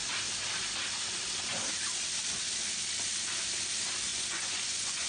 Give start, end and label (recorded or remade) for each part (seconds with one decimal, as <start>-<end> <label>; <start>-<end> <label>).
0.0-4.1 recorded; 4.1-5.1 remade